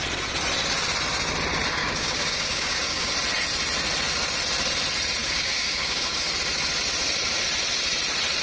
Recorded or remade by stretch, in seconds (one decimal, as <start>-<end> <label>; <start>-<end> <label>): 0.0-1.8 recorded; 1.8-3.1 remade; 3.1-5.2 recorded; 5.2-6.3 remade; 6.3-8.4 recorded